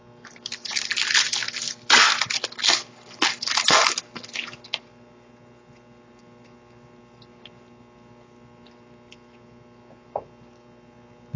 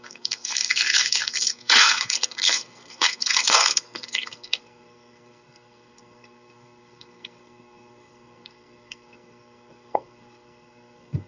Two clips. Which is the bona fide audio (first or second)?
first